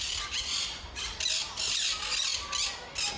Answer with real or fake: real